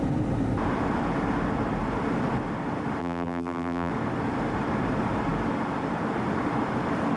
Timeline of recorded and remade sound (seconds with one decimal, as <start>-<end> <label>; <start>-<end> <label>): 0.0-3.0 recorded; 3.0-3.9 remade; 3.9-7.2 recorded